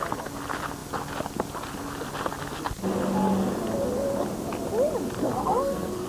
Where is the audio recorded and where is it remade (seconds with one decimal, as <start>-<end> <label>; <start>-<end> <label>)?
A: 0.0-5.2 recorded; 5.2-6.1 remade